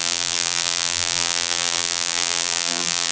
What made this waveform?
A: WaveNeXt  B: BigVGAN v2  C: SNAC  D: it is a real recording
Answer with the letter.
B